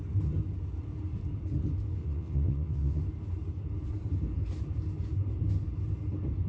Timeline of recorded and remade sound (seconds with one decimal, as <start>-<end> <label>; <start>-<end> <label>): 0.0-2.0 recorded; 2.0-3.0 remade; 3.0-6.5 recorded